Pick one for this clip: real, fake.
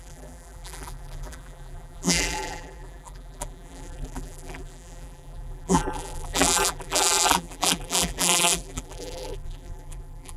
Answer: fake